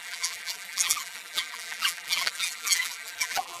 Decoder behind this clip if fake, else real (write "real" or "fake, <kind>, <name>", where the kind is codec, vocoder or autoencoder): fake, vocoder, BigVGAN v2